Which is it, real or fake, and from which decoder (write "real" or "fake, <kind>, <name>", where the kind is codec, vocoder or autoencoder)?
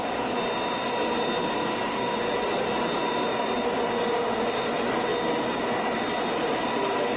real